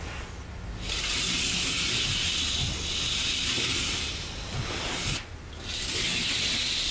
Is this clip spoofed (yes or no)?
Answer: no